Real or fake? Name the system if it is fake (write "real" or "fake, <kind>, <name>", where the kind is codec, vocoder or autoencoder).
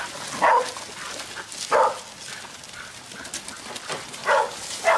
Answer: real